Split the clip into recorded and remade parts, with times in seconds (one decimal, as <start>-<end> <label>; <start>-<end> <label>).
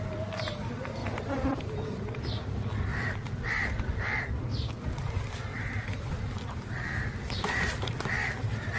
0.0-1.0 recorded; 1.0-1.6 remade; 1.6-2.9 recorded; 2.9-4.3 remade; 4.3-5.5 recorded; 5.5-6.1 remade; 6.1-8.8 recorded